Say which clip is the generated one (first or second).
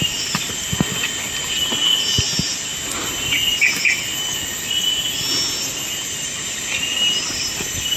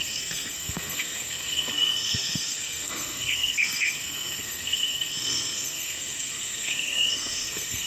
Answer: second